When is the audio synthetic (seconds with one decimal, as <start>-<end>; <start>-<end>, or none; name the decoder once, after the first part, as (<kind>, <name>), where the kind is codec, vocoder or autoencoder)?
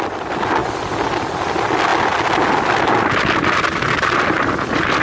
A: none